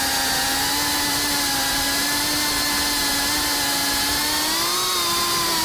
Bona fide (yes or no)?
yes